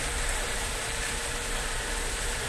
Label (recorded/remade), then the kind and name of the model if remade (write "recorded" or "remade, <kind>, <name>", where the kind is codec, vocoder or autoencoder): remade, vocoder, BigVGAN v2